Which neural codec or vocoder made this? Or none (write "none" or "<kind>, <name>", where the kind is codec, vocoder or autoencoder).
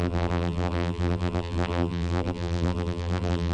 vocoder, BigVGAN v2